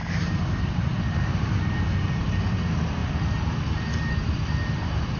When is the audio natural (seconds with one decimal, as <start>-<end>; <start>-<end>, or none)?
0.0-1.0; 1.6-2.2

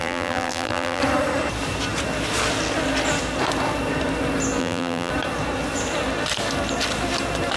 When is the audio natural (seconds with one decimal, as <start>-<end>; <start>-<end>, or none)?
1.0-4.6; 5.1-7.6

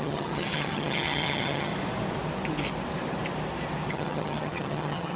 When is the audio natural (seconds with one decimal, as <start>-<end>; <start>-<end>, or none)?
1.7-3.9

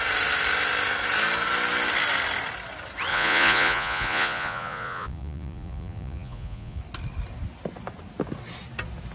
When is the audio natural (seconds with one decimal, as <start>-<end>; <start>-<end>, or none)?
0.0-3.1; 6.8-9.1

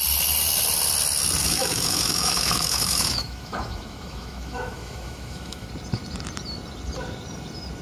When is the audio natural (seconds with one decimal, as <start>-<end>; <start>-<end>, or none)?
0.0-1.4; 5.7-7.8

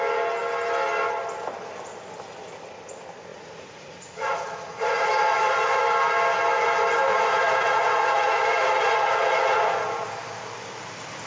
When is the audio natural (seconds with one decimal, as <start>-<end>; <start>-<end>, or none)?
0.0-3.3; 5.8-7.1; 9.6-11.3

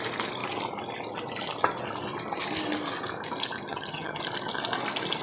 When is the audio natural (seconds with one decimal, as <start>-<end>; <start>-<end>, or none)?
0.0-3.7; 4.2-5.2

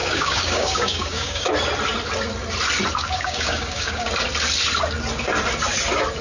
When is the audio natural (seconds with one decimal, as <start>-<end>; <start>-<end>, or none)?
1.5-3.0; 4.1-6.2